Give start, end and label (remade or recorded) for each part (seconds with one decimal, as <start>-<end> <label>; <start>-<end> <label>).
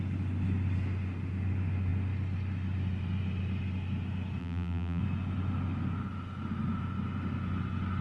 0.0-4.4 recorded; 4.4-5.0 remade; 5.0-8.0 recorded